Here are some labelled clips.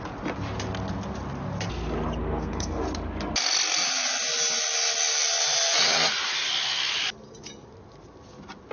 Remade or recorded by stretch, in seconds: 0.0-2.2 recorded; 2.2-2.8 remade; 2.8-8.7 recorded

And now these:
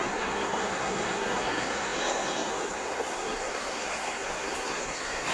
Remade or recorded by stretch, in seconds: 0.0-5.3 remade

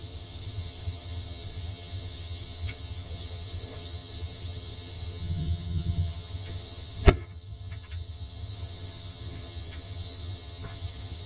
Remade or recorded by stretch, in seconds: 0.0-11.3 remade

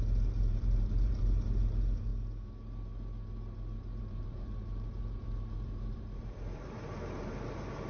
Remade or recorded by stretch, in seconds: 0.0-2.1 remade; 2.1-4.0 recorded; 4.0-7.9 remade